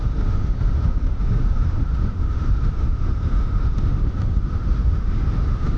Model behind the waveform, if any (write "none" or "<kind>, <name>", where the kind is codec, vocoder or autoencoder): autoencoder, DAC-VAE